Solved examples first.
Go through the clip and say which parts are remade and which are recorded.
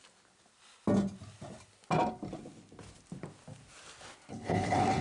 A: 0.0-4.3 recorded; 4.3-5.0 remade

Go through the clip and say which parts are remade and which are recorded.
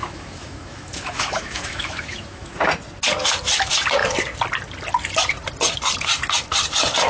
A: 0.0-2.6 remade; 2.6-7.1 recorded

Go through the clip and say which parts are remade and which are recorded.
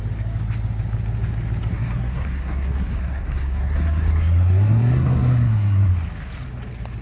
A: 0.0-1.7 recorded; 1.7-5.9 remade; 5.9-7.0 recorded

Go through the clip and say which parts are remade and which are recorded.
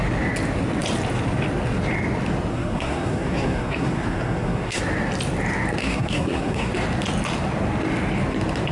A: 0.0-2.5 recorded; 2.5-4.8 remade; 4.8-5.8 recorded; 5.8-6.7 remade; 6.7-8.7 recorded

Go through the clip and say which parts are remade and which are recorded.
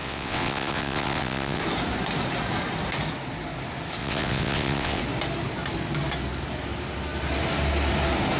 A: 0.0-1.6 remade; 1.6-4.0 recorded; 4.0-5.0 remade; 5.0-8.4 recorded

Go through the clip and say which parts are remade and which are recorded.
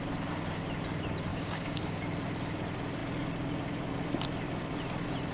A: 0.0-1.3 recorded; 1.3-1.8 remade; 1.8-5.3 recorded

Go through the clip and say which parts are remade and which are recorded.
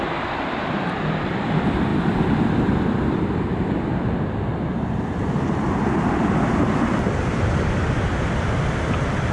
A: 0.0-9.3 recorded